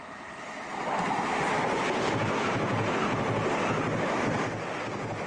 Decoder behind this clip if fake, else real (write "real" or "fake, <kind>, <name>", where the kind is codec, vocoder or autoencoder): real